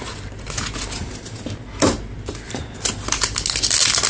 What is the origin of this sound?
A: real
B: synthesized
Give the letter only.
A